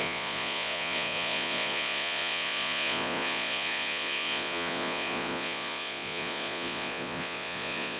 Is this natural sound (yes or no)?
no